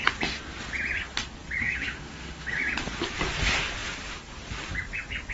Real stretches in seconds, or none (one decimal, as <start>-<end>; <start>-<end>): 0.0-1.6; 2.6-5.3